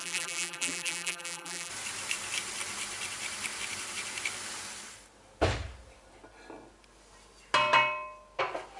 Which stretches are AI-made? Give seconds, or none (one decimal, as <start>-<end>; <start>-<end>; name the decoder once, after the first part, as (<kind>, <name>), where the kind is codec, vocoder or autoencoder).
0.0-1.7 (vocoder, BigVGAN v2)